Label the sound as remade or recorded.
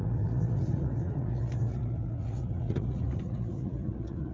remade